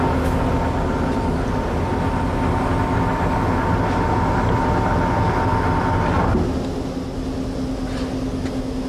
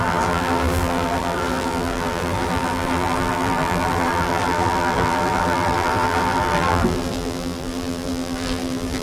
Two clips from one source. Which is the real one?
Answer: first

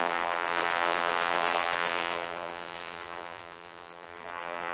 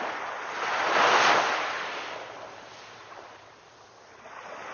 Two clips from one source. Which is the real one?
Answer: second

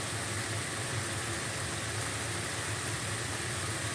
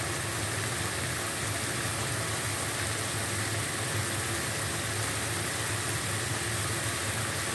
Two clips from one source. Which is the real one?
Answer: second